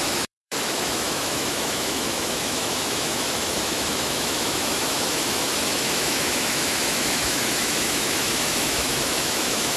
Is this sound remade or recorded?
remade